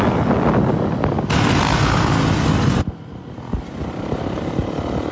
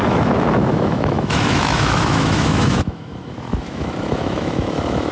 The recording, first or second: first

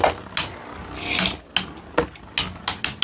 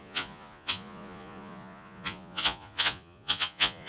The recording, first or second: first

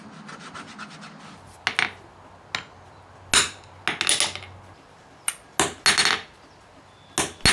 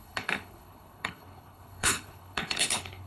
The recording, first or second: first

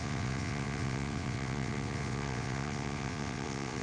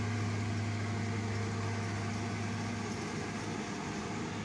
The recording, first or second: second